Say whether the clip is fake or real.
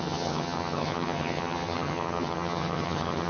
fake